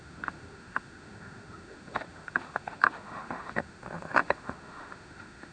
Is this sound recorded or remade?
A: remade